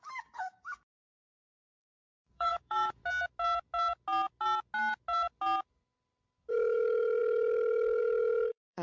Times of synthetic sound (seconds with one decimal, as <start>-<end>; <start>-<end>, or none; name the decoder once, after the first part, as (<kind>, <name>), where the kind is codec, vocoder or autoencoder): 0.0-3.0 (codec, DAC); 6.5-8.8

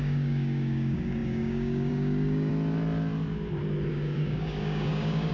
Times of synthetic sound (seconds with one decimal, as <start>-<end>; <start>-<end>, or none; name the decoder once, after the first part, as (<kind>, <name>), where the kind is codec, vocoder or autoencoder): 0.0-2.5 (codec, DAC); 3.9-5.3

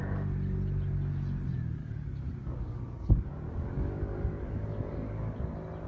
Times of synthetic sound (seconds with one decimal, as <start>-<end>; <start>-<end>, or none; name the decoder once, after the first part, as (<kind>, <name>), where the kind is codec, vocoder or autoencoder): 1.8-5.3 (codec, DAC)

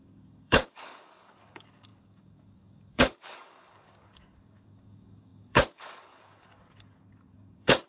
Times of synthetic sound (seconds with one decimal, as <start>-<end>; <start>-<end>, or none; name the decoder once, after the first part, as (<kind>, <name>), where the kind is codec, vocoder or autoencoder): 0.0-7.9 (codec, DAC)

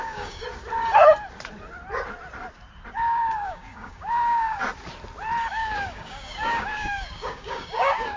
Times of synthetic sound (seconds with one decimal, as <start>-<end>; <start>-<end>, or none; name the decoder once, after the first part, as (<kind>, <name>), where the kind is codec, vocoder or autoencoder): 0.0-0.4 (codec, DAC); 2.9-4.6; 5.5-8.2

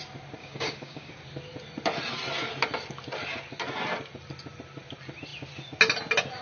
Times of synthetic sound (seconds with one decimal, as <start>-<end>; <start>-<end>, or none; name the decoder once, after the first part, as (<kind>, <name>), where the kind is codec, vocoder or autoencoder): 0.4-1.1 (codec, DAC)

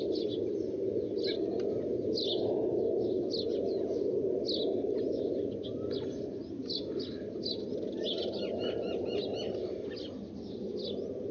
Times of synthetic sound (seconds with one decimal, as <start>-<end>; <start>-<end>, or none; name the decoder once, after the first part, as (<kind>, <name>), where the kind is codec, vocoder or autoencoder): none

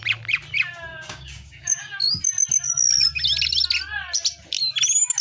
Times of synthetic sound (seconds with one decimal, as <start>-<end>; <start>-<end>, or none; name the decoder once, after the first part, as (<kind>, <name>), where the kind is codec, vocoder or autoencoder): 0.9-2.0 (codec, DAC)